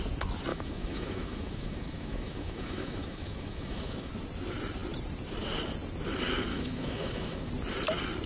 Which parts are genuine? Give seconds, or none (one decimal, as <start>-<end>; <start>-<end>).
0.0-0.5; 4.1-6.5; 7.5-8.3